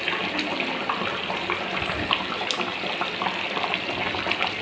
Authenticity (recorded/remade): recorded